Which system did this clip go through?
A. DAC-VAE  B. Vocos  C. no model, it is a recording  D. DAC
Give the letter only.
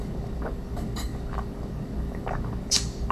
D